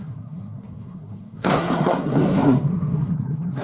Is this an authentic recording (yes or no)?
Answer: no